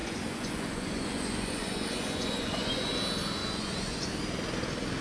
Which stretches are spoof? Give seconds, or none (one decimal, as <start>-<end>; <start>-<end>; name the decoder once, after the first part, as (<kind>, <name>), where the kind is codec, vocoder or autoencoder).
0.0-2.9 (vocoder, Vocos); 3.4-4.1